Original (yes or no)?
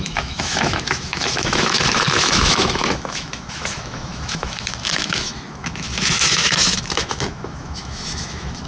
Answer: no